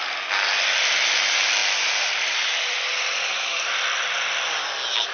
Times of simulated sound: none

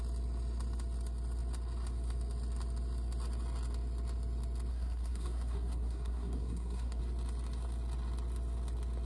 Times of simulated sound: 4.7-7.0 (codec, SNAC)

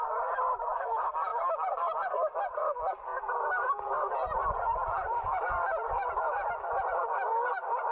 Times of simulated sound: 3.1-6.5 (vocoder, BigVGAN v2)

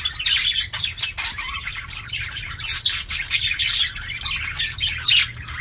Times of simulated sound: 0.4-3.8 (vocoder, BigVGAN v2)